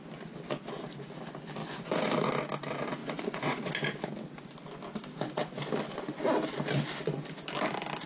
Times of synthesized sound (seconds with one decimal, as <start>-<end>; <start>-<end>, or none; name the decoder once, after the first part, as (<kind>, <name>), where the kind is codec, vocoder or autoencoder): 1.6-2.3 (vocoder, Vocos); 3.0-3.7